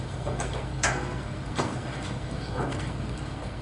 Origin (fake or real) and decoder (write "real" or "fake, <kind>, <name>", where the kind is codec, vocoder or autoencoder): fake, codec, SNAC